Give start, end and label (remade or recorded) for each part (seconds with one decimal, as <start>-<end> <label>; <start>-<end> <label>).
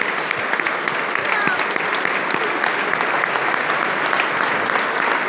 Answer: 0.0-5.3 recorded